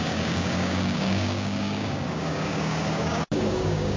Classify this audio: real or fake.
fake